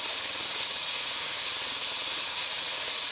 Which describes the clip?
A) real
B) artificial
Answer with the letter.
B